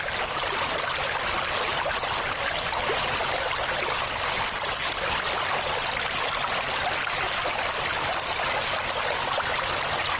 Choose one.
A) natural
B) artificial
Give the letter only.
A